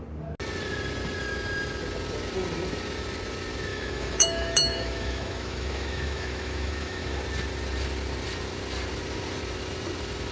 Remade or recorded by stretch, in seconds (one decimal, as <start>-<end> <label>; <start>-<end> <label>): 0.0-3.7 recorded; 3.7-7.2 remade; 7.2-10.3 recorded